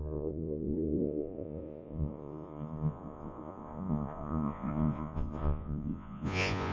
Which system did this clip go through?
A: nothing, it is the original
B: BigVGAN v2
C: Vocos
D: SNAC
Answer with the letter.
C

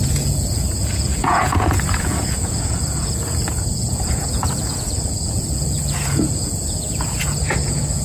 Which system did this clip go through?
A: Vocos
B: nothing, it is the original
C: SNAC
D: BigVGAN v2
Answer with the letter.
A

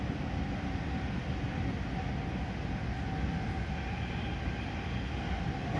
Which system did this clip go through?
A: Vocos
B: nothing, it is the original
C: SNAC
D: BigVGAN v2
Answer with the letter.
B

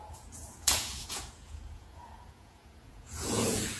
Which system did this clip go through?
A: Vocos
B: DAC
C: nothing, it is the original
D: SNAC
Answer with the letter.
A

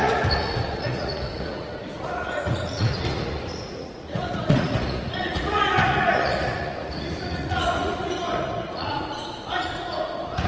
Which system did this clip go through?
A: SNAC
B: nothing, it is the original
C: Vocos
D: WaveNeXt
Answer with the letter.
C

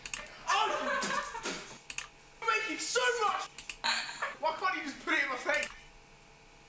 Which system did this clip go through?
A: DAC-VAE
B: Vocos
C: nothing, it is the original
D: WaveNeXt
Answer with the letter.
C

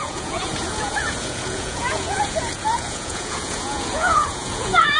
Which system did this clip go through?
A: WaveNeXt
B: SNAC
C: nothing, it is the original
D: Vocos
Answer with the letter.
D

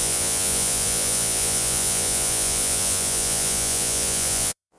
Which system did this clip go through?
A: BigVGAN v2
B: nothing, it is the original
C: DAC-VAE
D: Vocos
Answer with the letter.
D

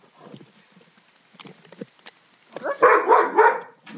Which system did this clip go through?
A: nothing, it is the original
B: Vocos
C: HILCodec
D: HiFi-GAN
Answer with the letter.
A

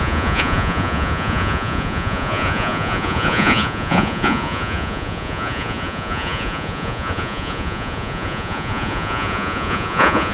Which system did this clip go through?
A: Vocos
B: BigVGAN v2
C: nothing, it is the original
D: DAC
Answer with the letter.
A